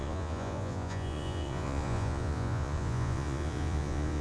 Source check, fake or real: fake